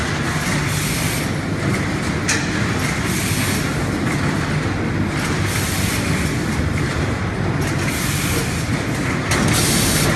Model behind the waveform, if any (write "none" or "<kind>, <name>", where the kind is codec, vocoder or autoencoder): none